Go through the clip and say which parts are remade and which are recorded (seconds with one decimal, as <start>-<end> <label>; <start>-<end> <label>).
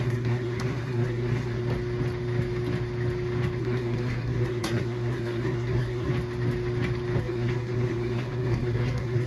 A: 0.0-1.6 remade; 1.6-3.6 recorded; 3.6-6.1 remade; 6.1-7.2 recorded; 7.2-9.3 remade